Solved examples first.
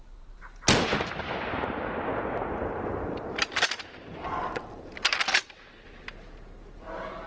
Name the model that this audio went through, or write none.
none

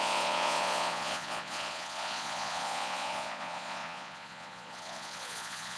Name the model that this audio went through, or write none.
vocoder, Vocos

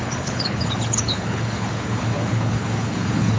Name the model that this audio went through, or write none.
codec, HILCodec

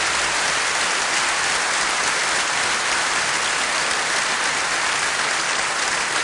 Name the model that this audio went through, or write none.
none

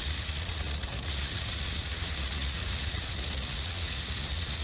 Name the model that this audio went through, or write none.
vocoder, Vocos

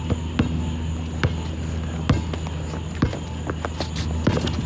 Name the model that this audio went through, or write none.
none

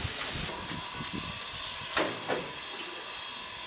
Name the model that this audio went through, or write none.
none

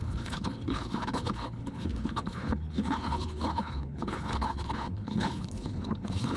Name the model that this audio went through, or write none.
codec, HILCodec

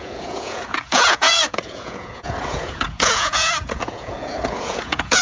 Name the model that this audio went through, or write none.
vocoder, Vocos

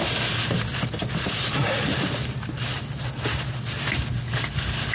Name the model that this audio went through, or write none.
none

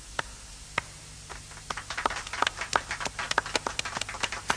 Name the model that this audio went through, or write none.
none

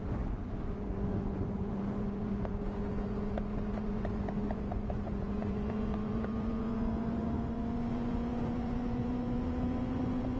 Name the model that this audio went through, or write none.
vocoder, Vocos